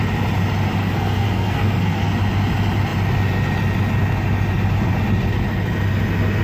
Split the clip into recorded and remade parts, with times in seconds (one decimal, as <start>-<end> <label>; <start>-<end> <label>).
0.0-0.8 recorded; 0.8-2.1 remade; 2.1-6.4 recorded

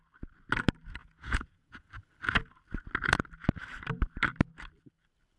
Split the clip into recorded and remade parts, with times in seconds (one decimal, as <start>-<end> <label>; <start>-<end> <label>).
0.0-1.0 recorded; 1.0-1.9 remade; 1.9-5.4 recorded